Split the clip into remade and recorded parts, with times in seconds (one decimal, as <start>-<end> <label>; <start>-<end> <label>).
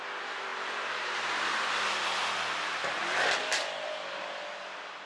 0.0-5.1 recorded